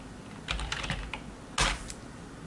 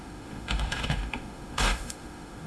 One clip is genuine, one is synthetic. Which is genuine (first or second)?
first